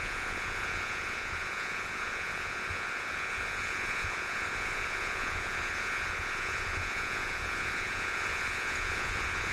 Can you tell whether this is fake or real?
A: fake